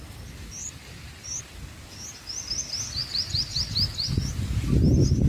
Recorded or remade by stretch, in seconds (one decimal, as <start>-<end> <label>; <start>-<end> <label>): 0.0-0.6 recorded; 0.6-1.4 remade; 1.4-3.0 recorded; 3.0-3.6 remade; 3.6-5.3 recorded